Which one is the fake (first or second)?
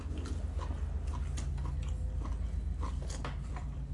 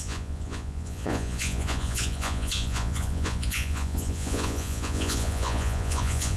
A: second